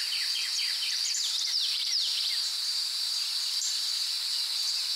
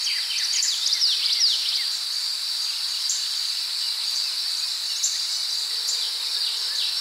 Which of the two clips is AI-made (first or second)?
first